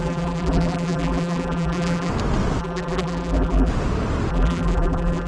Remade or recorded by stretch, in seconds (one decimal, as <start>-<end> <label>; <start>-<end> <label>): 0.0-2.1 remade; 2.1-2.6 recorded; 2.6-3.7 remade; 3.7-4.3 recorded; 4.3-5.3 remade